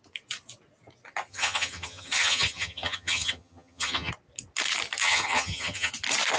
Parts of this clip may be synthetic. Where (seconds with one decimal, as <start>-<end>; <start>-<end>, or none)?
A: 1.3-4.1; 5.0-5.9